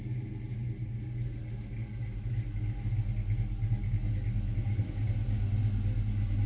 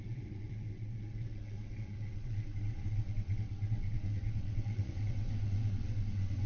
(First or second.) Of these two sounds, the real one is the first